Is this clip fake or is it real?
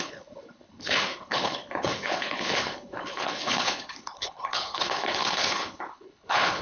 fake